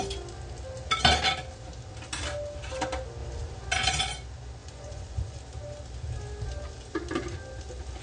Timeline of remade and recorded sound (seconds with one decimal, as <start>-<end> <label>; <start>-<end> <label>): 0.0-4.6 recorded; 4.6-5.4 remade; 5.4-8.0 recorded